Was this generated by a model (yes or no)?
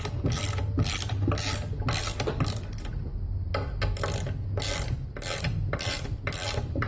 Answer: no